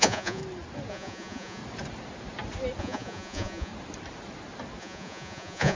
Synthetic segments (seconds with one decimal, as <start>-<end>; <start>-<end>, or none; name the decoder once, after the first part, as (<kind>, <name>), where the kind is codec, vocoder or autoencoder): 0.0-0.4 (vocoder, Vocos); 0.9-1.6; 2.8-3.7; 4.8-5.7